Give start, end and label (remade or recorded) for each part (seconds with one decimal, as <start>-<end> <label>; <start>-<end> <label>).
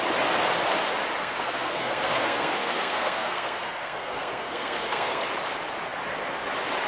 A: 0.0-1.2 recorded; 1.2-5.2 remade; 5.2-6.9 recorded